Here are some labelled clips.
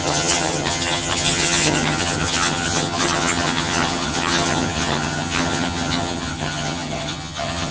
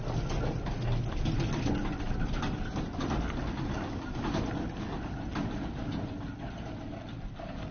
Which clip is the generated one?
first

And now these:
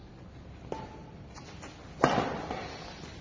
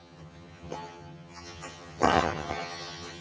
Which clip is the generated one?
second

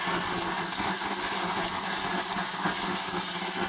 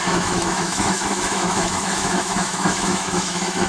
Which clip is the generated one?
second